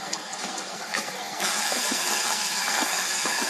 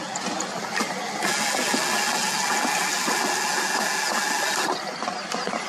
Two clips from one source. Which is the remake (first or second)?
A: first